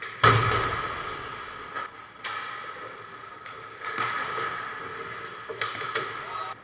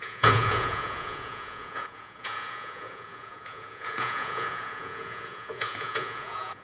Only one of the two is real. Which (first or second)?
first